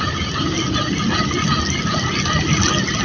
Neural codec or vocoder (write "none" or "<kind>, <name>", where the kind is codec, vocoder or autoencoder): none